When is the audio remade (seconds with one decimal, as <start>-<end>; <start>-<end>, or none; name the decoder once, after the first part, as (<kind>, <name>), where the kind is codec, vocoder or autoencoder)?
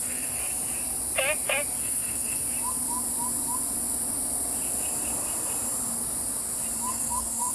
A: 0.0-0.4 (codec, SNAC); 1.8-2.4; 6.9-7.5